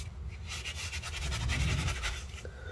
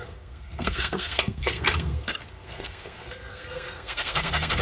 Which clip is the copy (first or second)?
second